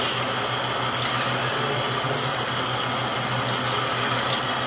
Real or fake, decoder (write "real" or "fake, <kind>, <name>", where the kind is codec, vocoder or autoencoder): real